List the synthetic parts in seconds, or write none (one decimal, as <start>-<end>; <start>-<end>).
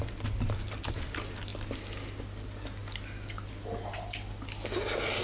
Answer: none